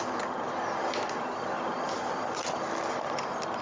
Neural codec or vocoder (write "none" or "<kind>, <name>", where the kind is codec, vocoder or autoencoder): none